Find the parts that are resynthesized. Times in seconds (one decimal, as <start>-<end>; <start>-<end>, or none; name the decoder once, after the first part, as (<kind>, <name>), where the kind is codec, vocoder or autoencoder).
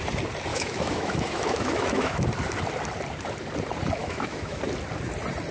0.5-2.3 (autoencoder, DAC-VAE); 4.0-4.6